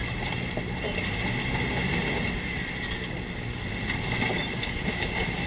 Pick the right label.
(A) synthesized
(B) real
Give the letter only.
B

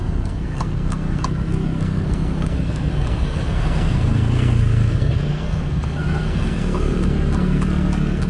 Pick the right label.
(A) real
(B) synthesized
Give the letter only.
B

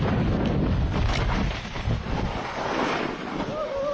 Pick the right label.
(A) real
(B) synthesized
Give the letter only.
A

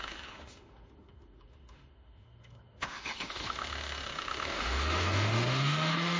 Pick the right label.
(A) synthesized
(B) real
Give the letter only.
A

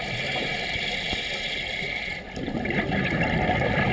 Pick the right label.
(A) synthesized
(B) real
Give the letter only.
B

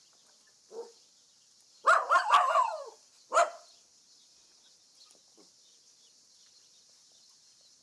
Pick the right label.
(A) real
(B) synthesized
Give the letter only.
A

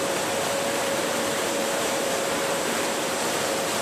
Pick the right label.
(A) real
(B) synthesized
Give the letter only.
B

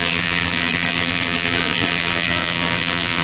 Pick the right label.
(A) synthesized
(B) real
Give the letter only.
A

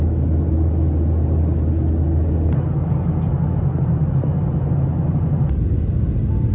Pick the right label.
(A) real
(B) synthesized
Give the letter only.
A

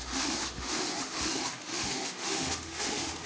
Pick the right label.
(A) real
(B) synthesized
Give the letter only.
B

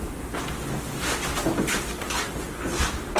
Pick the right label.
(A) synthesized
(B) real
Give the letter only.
B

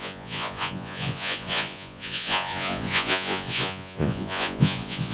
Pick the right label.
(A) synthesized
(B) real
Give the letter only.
A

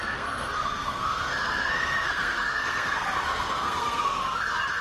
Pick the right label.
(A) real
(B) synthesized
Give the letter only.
B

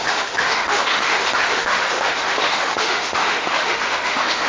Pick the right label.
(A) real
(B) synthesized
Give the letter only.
B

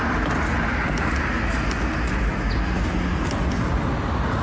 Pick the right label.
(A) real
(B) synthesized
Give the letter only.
A